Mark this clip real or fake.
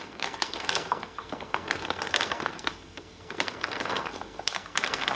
fake